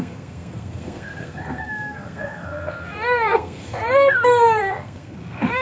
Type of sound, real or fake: fake